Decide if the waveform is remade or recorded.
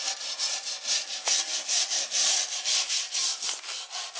recorded